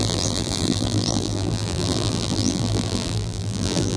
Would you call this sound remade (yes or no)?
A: yes